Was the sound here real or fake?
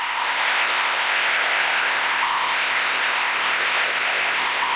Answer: fake